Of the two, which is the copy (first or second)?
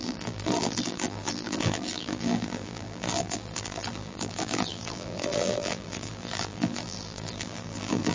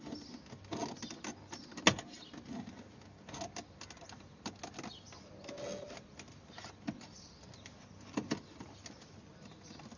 first